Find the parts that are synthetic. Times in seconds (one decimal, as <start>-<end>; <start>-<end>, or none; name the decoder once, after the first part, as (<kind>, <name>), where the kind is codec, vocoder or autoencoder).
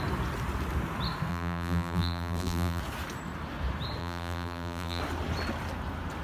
1.3-2.8 (vocoder, BigVGAN v2); 4.0-5.0